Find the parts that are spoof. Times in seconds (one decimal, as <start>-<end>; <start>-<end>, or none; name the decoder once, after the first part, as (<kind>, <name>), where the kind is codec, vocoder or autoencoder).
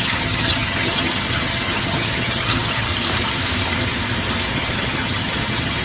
0.0-2.9 (vocoder, HiFi-GAN); 4.5-5.8